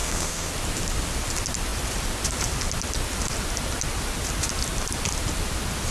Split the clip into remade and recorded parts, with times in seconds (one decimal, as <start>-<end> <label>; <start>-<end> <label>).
0.0-0.5 remade; 0.5-5.9 recorded